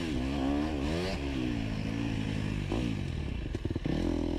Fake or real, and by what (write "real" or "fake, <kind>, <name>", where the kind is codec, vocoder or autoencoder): real